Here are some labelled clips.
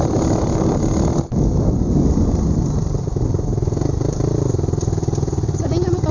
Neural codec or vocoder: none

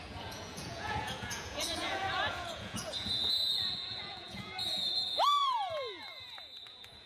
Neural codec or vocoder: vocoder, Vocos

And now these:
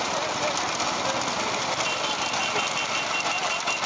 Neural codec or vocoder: none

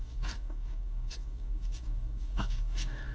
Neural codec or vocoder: codec, DAC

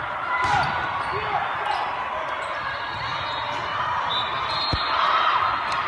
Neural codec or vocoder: none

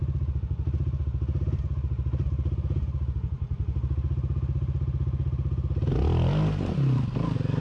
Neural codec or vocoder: none